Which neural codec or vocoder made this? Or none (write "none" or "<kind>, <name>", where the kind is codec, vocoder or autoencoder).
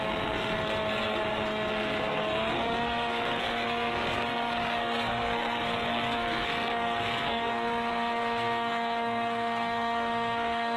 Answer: codec, SNAC